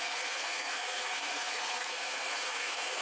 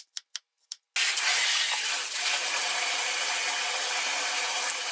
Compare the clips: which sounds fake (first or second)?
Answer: first